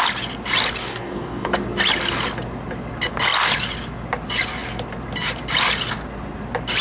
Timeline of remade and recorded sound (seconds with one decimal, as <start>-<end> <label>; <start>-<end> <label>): 0.0-0.8 recorded; 0.8-1.5 remade; 1.5-6.8 recorded

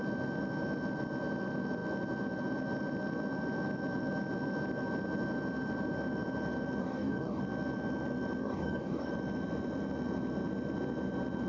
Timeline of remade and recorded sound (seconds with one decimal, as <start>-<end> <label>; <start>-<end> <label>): 0.0-6.8 recorded; 6.8-7.4 remade; 7.4-8.4 recorded; 8.4-9.1 remade; 9.1-11.5 recorded

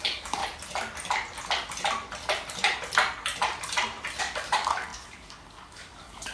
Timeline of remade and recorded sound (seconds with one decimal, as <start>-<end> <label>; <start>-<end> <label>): 0.0-0.4 remade; 0.4-4.2 recorded; 4.2-6.3 remade

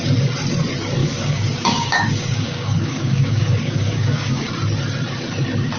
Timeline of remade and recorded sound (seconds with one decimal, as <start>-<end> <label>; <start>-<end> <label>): 0.0-1.0 recorded; 1.0-4.5 remade; 4.5-5.8 recorded